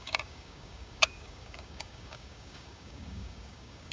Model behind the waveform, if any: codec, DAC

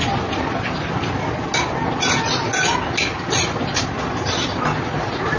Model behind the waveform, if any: none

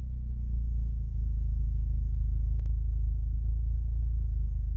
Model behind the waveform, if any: codec, DAC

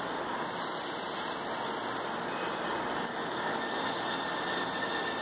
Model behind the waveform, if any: none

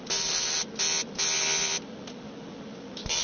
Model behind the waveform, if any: none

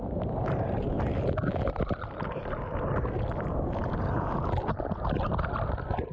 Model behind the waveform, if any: none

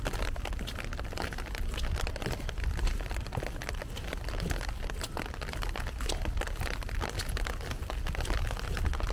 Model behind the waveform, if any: none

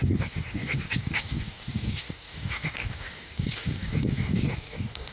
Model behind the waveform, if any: codec, DAC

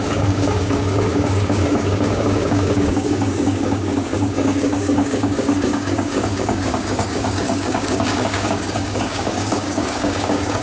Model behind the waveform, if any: codec, DAC